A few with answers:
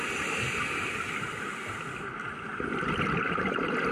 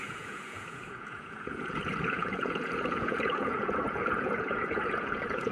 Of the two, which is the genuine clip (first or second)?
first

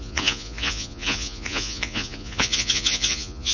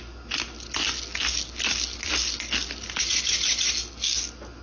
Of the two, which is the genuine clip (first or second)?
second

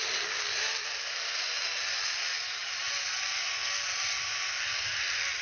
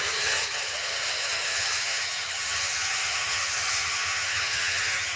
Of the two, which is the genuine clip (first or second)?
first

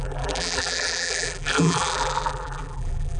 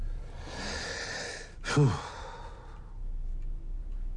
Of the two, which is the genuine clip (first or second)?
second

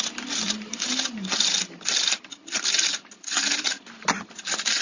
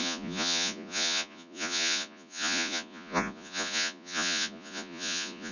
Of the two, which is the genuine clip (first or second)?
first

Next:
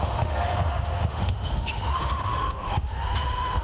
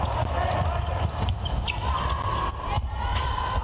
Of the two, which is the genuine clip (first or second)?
second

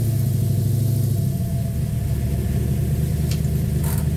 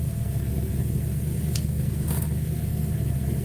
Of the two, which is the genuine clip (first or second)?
first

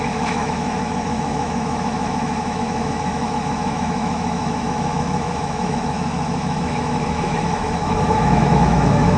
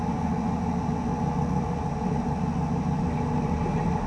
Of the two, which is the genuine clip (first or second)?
second